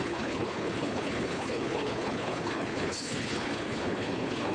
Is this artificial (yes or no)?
yes